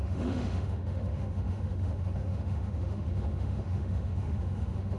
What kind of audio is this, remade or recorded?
remade